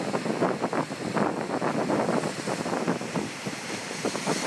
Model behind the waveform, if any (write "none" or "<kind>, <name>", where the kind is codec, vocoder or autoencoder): none